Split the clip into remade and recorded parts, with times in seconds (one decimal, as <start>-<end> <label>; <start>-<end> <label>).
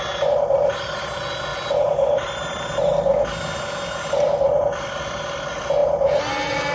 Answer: 0.0-6.7 recorded